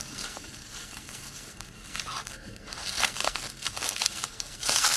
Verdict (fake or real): fake